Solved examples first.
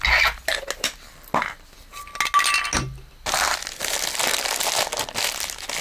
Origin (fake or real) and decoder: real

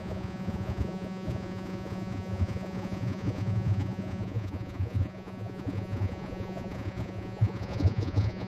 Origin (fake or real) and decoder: fake, vocoder, Vocos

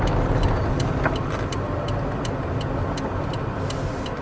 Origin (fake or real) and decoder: real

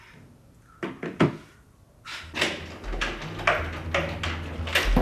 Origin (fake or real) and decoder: real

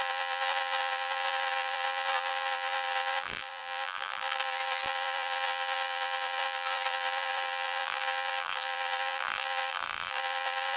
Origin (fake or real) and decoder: fake, vocoder, BigVGAN v2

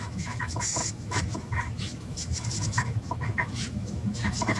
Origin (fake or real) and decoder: fake, autoencoder, DAC-VAE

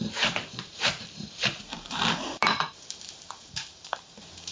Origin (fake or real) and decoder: fake, vocoder, BigVGAN v2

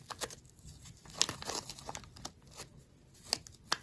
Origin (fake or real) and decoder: real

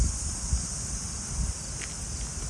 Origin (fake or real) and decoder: real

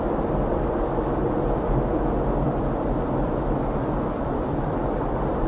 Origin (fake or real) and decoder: fake, vocoder, BigVGAN v2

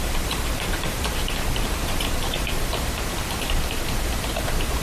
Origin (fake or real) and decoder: fake, vocoder, BigVGAN v2